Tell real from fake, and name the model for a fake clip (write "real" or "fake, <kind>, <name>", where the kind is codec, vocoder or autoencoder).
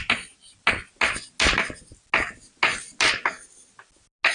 real